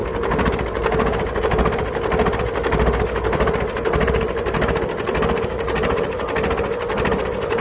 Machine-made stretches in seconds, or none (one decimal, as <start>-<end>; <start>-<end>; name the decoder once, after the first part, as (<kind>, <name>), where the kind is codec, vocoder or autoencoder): none

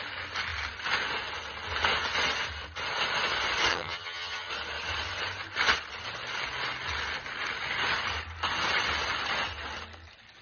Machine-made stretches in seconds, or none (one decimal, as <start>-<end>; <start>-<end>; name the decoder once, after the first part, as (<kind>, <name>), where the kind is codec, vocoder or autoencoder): 3.7-4.5 (vocoder, HiFi-GAN)

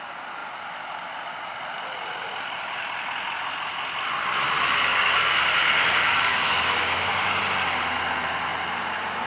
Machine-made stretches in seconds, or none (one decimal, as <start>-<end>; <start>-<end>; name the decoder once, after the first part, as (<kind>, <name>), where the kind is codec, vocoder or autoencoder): 4.9-7.4 (codec, DAC)

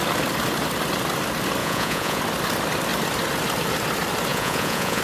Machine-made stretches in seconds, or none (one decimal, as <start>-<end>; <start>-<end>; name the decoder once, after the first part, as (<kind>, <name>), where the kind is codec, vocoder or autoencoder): 1.6-2.2 (vocoder, Vocos); 4.3-5.0